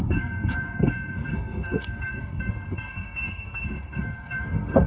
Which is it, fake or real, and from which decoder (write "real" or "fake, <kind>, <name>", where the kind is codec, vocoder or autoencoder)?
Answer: fake, codec, SNAC